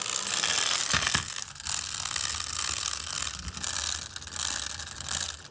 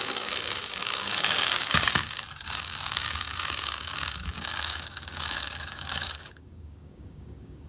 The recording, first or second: first